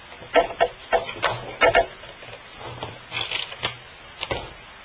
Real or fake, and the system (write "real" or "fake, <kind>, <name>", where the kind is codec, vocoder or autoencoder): real